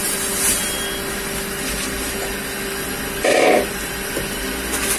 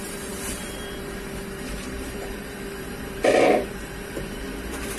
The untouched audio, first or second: first